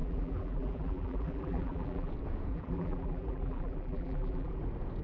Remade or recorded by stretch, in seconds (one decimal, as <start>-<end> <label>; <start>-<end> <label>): 0.0-2.1 remade; 2.1-2.5 recorded; 2.5-4.6 remade; 4.6-5.0 recorded